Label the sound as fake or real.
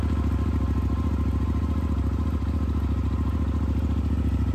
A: real